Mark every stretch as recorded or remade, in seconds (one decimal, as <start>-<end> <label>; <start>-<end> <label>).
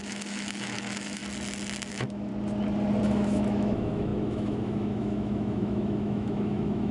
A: 0.0-1.2 remade; 1.2-1.9 recorded; 1.9-2.3 remade; 2.3-3.0 recorded; 3.0-6.9 remade